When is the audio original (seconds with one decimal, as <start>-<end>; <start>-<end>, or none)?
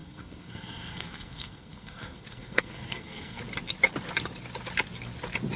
3.4-5.6